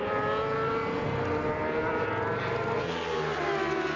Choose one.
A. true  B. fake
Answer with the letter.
A